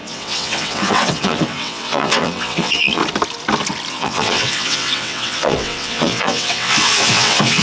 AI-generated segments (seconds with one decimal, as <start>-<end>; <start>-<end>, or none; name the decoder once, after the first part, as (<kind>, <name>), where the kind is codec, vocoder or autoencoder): 0.0-3.0 (vocoder, WaveNeXt); 3.9-7.6